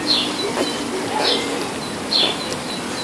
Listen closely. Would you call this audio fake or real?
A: real